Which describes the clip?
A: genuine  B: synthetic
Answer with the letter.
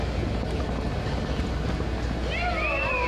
A